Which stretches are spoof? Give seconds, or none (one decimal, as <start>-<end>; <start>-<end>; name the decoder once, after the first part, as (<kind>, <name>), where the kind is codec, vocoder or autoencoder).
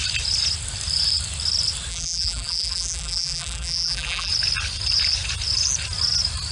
1.9-4.3 (vocoder, BigVGAN v2)